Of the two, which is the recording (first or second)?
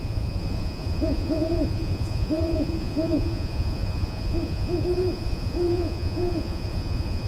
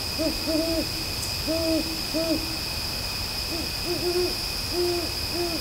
second